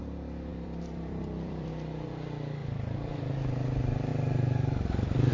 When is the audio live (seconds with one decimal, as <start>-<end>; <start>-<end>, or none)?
0.0-0.5; 1.7-2.6; 3.3-4.1